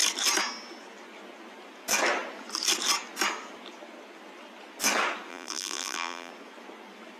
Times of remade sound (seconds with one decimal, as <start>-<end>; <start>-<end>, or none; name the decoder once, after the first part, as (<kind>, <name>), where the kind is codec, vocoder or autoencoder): 5.3-6.3 (vocoder, BigVGAN v2)